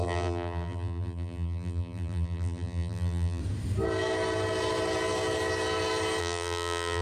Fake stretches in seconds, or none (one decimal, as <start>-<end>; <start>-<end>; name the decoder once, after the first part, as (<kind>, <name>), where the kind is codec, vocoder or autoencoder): 0.0-3.4 (vocoder, BigVGAN v2); 6.2-7.0